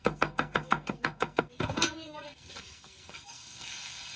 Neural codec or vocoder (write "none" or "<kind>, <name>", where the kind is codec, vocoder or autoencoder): codec, SNAC